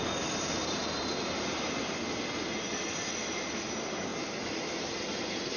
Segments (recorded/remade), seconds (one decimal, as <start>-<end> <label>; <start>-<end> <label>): 0.0-5.6 recorded